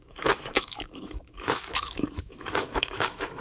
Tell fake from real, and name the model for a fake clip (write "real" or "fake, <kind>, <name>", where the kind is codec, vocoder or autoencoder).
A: fake, autoencoder, DAC-VAE